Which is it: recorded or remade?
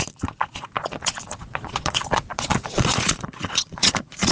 remade